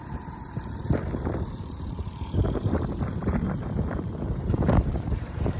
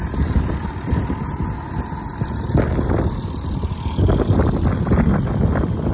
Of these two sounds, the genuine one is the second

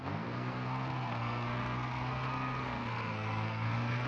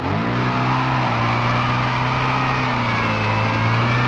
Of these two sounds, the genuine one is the second